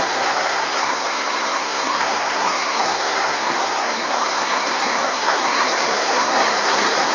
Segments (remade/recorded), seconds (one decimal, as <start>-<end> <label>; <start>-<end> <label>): 0.0-7.1 remade